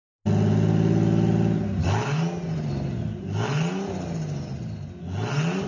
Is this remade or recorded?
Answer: recorded